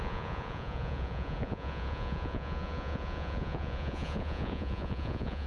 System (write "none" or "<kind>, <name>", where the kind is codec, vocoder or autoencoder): vocoder, Vocos